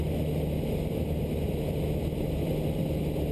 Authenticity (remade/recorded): recorded